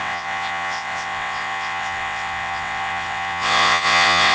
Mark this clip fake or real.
fake